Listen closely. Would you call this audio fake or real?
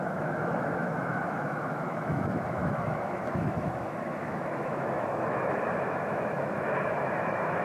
fake